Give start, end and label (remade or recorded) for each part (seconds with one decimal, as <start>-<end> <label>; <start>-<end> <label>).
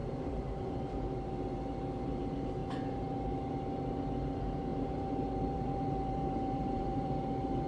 0.0-1.3 remade; 1.3-2.6 recorded; 2.6-3.5 remade; 3.5-4.7 recorded; 4.7-7.3 remade; 7.3-7.7 recorded